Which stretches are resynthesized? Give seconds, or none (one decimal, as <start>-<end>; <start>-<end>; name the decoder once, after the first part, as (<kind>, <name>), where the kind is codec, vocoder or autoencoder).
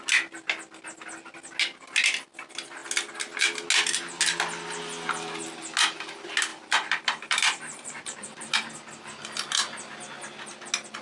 6.5-8.5 (vocoder, BigVGAN v2)